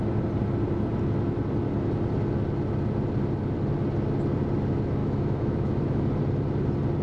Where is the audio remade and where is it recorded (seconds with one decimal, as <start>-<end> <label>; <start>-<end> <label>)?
0.0-5.0 recorded; 5.0-6.2 remade; 6.2-7.0 recorded